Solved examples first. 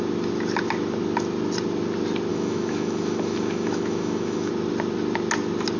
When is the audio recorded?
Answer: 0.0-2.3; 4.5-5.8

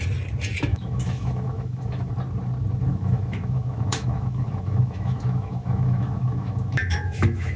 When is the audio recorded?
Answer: 0.0-0.7; 2.1-2.9